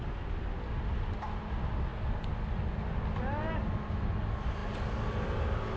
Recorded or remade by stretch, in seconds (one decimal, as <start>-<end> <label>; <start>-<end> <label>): 0.0-5.8 recorded